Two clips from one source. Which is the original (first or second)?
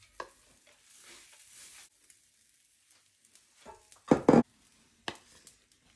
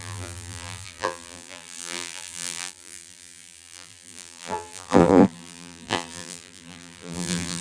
first